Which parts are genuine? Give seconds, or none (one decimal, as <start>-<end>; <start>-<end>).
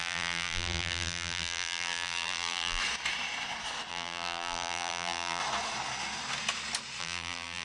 2.8-3.9; 5.4-7.0